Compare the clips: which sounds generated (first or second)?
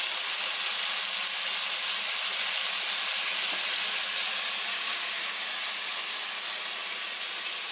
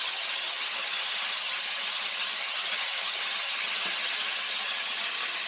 second